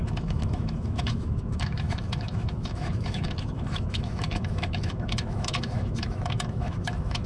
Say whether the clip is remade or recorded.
remade